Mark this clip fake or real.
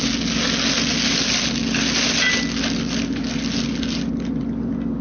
real